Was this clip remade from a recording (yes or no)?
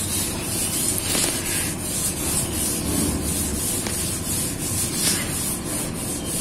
no